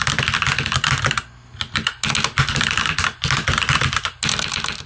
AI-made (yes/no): no